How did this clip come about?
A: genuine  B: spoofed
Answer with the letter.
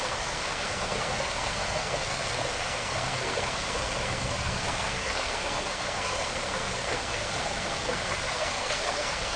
B